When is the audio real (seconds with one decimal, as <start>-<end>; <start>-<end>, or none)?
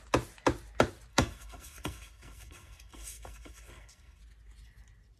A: 0.0-1.1; 4.2-5.2